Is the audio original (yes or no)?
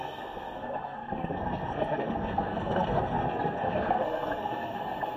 no